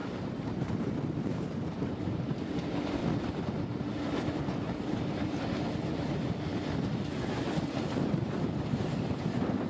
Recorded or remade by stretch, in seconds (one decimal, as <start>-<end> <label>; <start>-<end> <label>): 0.0-3.0 remade; 3.0-8.0 recorded; 8.0-9.7 remade